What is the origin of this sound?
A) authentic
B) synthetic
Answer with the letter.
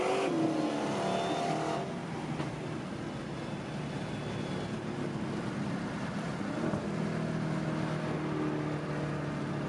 A